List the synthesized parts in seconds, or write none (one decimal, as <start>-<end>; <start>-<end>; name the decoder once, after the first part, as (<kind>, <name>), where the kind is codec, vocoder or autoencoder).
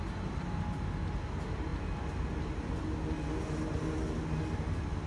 none